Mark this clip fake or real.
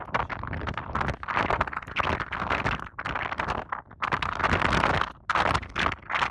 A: real